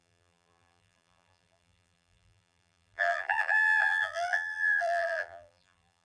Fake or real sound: fake